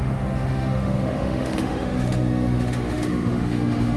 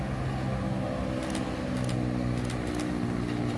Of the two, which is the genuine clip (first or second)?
second